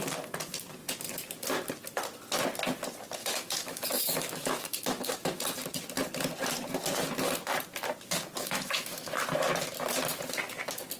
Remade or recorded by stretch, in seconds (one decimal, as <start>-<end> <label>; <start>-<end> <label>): 0.0-3.2 recorded; 3.2-5.4 remade; 5.4-8.4 recorded; 8.4-9.1 remade; 9.1-11.0 recorded